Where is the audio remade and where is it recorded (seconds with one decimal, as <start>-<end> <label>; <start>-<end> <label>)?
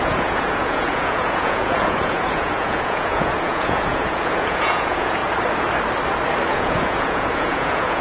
0.0-5.2 remade; 5.2-6.5 recorded; 6.5-8.0 remade